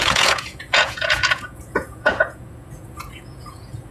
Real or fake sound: fake